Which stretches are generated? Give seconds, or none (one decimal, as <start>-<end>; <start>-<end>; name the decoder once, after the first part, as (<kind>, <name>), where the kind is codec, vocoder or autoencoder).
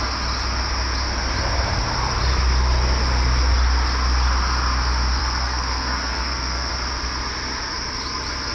5.2-6.7 (codec, SNAC)